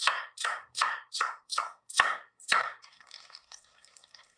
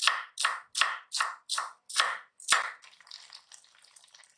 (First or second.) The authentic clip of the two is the second